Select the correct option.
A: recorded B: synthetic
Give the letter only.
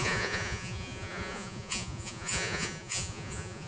B